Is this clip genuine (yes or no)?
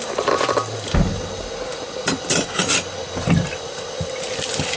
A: yes